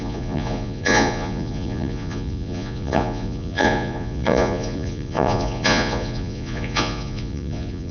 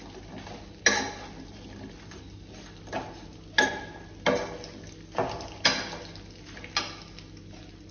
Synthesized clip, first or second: first